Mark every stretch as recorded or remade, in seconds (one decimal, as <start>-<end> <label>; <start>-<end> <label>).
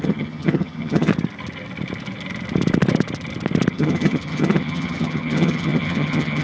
0.0-1.1 remade; 1.1-3.7 recorded; 3.7-6.4 remade